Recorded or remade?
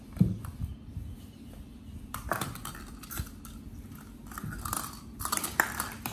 recorded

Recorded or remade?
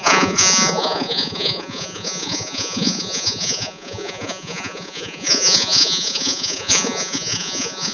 remade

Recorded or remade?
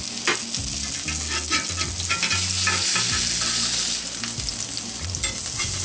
recorded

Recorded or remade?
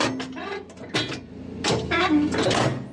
recorded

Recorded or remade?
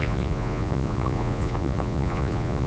remade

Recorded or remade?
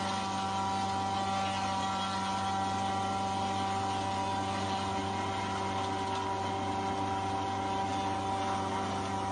recorded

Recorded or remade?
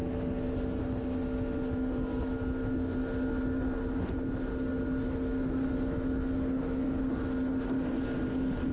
recorded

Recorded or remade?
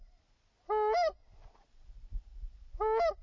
recorded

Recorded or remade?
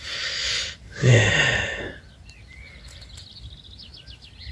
recorded